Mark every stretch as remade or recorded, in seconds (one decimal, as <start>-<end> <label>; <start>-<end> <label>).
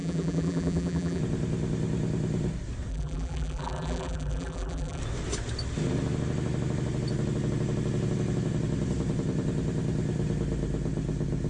0.0-1.2 remade; 1.2-2.9 recorded; 2.9-5.0 remade; 5.0-11.5 recorded